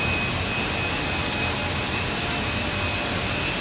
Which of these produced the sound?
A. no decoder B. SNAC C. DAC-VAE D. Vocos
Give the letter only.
A